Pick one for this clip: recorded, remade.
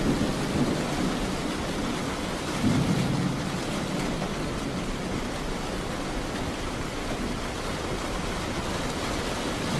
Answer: recorded